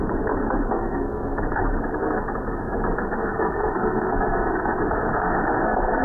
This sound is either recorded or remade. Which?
remade